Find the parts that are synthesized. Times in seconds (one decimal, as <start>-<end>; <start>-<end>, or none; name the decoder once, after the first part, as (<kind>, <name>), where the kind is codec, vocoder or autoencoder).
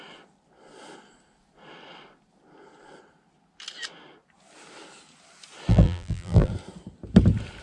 5.7-6.5 (vocoder, BigVGAN v2)